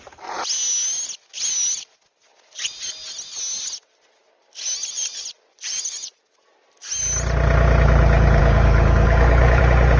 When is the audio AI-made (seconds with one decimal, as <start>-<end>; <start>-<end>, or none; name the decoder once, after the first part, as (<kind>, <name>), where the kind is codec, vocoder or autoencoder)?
8.4-9.6 (codec, DAC)